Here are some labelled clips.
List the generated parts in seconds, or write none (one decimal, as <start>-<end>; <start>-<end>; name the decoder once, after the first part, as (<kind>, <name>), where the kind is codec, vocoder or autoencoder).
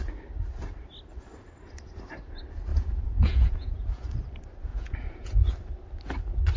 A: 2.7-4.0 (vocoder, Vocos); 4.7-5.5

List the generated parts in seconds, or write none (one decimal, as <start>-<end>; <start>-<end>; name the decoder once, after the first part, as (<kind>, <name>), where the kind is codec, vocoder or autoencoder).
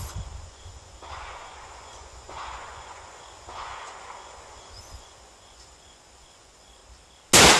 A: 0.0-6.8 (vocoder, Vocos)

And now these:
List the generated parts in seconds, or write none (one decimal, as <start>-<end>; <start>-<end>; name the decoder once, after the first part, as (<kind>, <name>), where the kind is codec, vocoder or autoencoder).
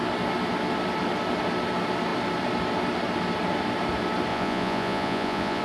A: 4.3-5.6 (vocoder, Vocos)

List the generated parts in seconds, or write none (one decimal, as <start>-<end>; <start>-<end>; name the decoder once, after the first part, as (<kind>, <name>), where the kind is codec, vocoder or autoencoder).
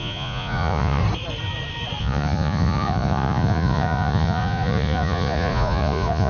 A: 0.0-1.0 (vocoder, Vocos); 2.0-6.3